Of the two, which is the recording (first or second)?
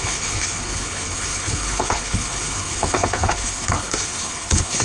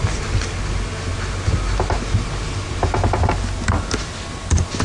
second